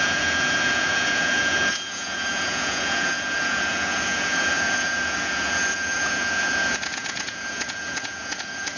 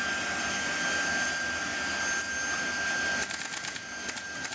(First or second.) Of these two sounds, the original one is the second